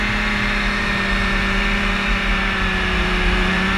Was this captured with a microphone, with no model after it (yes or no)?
no